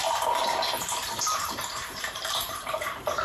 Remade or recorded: remade